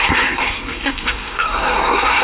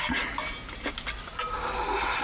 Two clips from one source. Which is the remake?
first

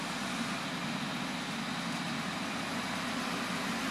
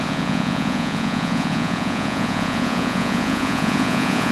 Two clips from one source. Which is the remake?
second